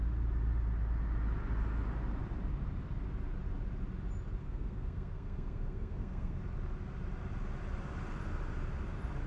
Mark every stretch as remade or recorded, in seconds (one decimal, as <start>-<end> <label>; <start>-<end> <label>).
0.0-4.4 recorded; 4.4-6.4 remade; 6.4-9.3 recorded